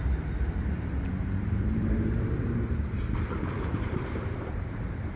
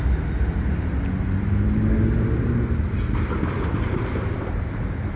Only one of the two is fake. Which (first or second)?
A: first